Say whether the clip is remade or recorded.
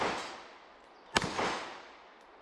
recorded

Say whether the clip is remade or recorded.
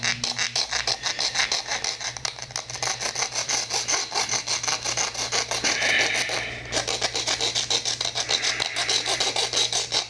recorded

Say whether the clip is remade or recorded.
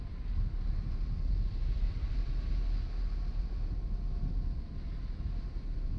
recorded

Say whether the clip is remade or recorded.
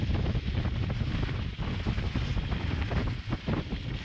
recorded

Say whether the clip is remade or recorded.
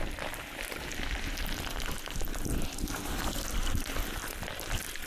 recorded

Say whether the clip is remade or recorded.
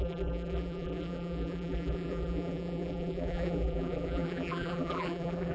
remade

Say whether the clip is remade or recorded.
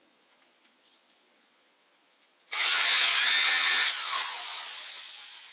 remade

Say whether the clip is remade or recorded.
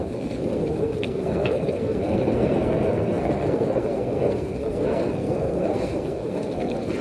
remade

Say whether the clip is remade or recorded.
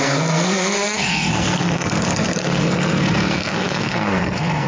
remade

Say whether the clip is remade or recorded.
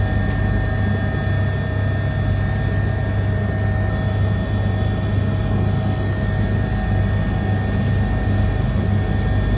recorded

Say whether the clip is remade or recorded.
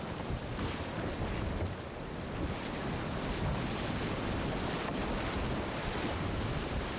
recorded